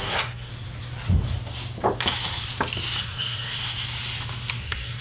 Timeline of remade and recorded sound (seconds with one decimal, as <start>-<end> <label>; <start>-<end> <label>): 0.0-0.5 remade; 0.5-3.0 recorded; 3.0-3.6 remade; 3.6-4.5 recorded; 4.5-5.0 remade